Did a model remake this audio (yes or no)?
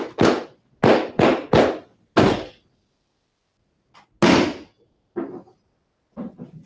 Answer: no